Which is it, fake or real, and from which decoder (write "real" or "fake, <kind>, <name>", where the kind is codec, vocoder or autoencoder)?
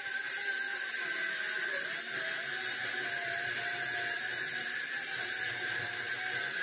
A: real